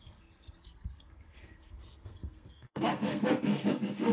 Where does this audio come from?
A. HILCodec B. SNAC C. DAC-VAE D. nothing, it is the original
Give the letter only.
B